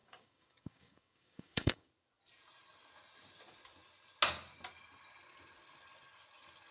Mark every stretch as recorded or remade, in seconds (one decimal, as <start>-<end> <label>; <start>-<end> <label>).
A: 0.0-1.9 remade; 1.9-6.7 recorded